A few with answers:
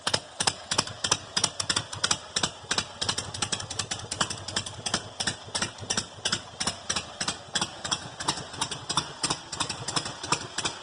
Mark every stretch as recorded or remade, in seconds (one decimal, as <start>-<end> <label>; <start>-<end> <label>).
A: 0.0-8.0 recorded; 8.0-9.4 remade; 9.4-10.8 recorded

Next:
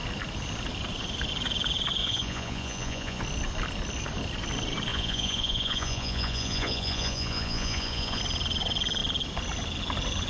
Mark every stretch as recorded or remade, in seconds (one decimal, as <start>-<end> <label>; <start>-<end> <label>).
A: 0.0-2.0 recorded; 2.0-3.2 remade; 3.2-4.9 recorded; 4.9-8.2 remade; 8.2-10.3 recorded

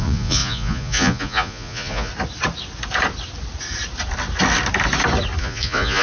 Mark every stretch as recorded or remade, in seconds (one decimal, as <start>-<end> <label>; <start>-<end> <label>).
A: 0.0-2.1 remade; 2.1-5.4 recorded; 5.4-6.0 remade

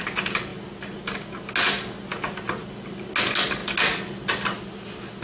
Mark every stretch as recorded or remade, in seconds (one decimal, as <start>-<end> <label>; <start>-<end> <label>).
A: 0.0-5.2 recorded

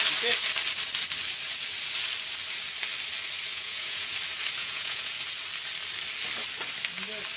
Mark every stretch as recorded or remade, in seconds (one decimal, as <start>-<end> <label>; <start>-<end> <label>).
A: 0.0-3.5 recorded; 3.5-4.1 remade; 4.1-4.6 recorded; 4.6-5.2 remade; 5.2-7.4 recorded

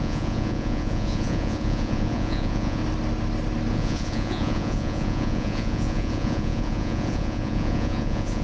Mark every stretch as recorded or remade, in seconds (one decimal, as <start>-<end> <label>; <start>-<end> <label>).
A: 0.0-2.8 remade; 2.8-3.7 recorded; 3.7-8.4 remade